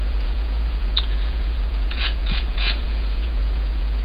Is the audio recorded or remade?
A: remade